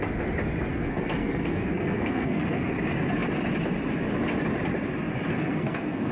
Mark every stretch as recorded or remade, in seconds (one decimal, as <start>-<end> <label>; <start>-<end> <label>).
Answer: 0.0-0.7 recorded; 0.7-2.7 remade; 2.7-5.3 recorded; 5.3-6.1 remade